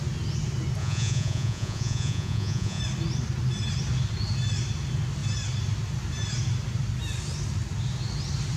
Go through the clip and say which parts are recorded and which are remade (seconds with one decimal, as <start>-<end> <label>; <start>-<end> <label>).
0.0-0.8 recorded; 0.8-2.8 remade; 2.8-8.6 recorded